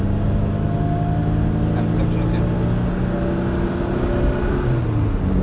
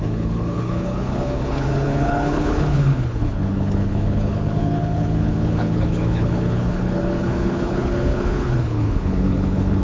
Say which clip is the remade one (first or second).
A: second